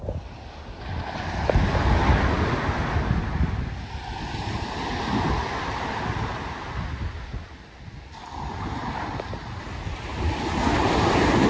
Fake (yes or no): no